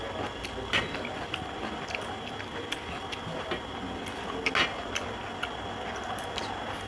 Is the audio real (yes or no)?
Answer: yes